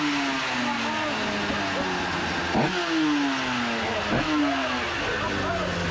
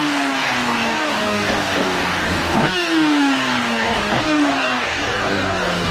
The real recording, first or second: first